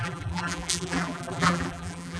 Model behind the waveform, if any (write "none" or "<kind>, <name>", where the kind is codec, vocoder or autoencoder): vocoder, BigVGAN v2